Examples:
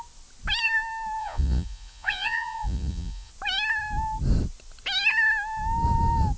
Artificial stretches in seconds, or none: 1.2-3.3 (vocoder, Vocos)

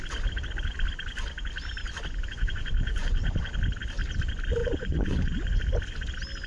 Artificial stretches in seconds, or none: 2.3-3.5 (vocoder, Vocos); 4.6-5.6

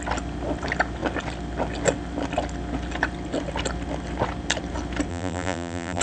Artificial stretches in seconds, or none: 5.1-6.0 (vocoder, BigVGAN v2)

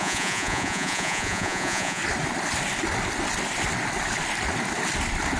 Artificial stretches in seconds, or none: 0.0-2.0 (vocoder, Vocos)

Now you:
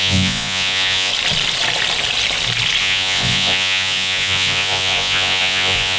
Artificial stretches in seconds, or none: 0.0-1.1 (vocoder, Vocos); 2.8-6.0

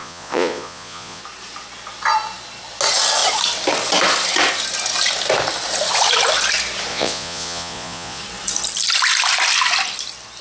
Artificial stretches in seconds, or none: 0.0-1.2 (vocoder, Vocos); 6.9-8.2